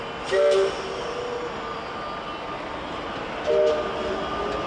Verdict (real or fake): real